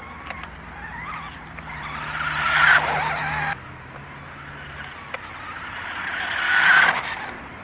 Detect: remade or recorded recorded